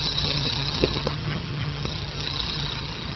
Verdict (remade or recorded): remade